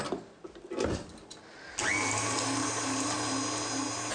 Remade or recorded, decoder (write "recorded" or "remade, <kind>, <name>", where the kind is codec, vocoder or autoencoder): recorded